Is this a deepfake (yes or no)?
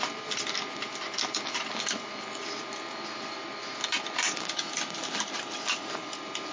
no